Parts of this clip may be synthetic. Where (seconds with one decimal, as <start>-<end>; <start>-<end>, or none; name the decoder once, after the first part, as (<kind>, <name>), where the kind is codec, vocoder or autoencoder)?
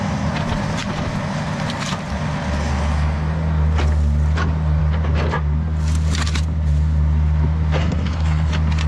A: 7.8-8.5 (codec, SNAC)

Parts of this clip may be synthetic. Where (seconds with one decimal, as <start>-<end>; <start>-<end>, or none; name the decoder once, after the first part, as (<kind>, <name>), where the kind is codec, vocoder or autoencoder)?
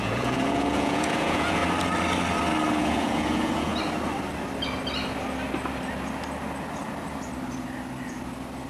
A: 0.0-1.6 (vocoder, Vocos); 2.8-3.7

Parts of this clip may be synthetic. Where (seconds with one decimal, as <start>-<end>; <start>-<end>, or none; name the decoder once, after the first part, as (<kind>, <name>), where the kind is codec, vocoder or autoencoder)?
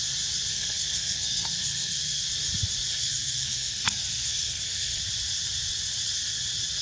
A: 0.5-2.2 (codec, SNAC); 2.9-5.0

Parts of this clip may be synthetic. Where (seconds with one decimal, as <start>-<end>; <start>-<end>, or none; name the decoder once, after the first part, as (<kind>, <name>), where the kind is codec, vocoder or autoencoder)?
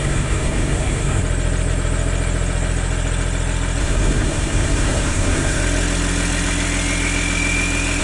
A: 0.0-1.2 (codec, SNAC); 3.8-5.6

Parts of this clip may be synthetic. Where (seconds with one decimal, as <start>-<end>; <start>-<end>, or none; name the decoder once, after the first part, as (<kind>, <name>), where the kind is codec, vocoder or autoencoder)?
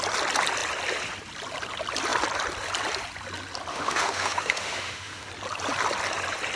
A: 3.7-5.3 (autoencoder, DAC-VAE)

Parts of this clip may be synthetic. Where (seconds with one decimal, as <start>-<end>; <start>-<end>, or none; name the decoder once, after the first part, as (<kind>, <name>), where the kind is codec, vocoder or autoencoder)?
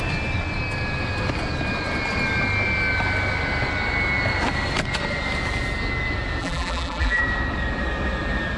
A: 6.4-7.2 (vocoder, BigVGAN v2)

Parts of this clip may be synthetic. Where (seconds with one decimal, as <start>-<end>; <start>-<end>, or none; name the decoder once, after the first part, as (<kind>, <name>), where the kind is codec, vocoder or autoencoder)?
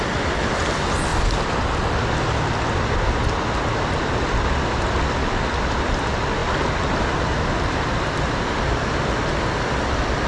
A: none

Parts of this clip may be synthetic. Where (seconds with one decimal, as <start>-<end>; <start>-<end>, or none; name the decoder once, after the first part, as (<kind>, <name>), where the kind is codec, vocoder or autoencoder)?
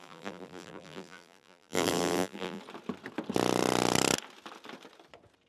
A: 0.0-2.6 (vocoder, BigVGAN v2)